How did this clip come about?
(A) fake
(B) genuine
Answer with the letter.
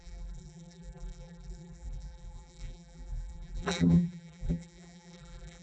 A